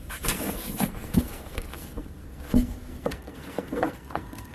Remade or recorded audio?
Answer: remade